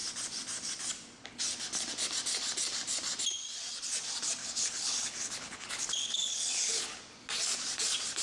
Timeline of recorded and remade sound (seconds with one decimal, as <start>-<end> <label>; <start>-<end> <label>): 0.0-4.4 recorded; 4.4-7.0 remade; 7.0-8.2 recorded